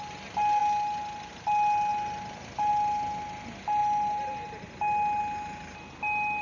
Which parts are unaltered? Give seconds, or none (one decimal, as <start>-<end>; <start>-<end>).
0.0-6.4